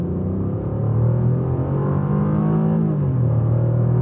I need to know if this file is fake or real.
real